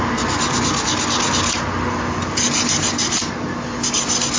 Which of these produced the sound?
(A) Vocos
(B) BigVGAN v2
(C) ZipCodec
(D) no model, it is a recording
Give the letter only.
D